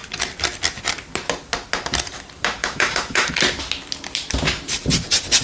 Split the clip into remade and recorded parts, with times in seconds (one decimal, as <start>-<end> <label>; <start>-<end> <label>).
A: 0.0-2.6 recorded; 2.6-3.3 remade; 3.3-5.4 recorded